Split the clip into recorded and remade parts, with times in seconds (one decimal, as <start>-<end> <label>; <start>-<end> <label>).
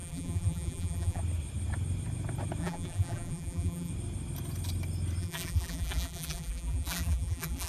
0.0-1.2 remade; 1.2-2.6 recorded; 2.6-3.9 remade; 3.9-5.2 recorded; 5.2-7.7 remade